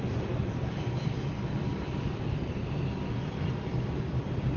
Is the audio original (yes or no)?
no